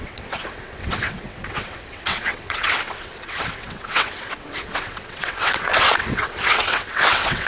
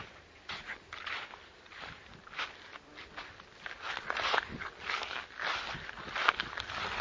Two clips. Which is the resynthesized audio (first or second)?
first